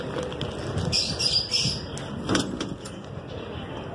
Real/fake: real